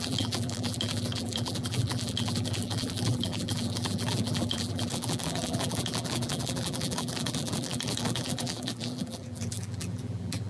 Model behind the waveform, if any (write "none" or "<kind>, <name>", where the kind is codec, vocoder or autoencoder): vocoder, BigVGAN v2